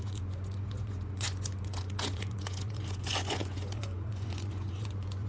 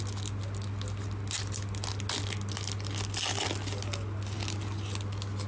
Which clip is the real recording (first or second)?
second